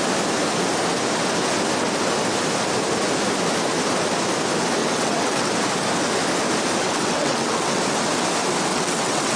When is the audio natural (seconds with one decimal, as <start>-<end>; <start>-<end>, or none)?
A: 0.0-4.8; 5.5-6.8; 7.8-8.7